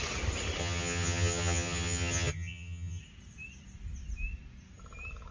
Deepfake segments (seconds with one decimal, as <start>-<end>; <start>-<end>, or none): 0.6-3.0